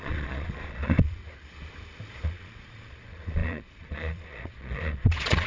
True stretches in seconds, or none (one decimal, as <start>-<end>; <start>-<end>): 1.2-2.1